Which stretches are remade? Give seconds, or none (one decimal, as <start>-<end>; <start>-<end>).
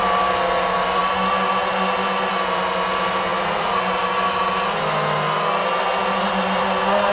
none